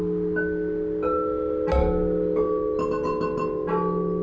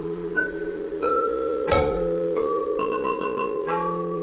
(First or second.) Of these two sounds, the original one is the first